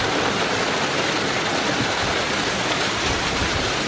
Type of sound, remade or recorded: recorded